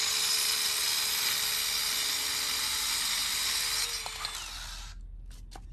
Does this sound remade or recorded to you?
recorded